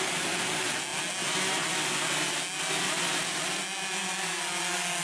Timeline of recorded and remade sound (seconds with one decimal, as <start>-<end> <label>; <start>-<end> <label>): 0.0-5.0 recorded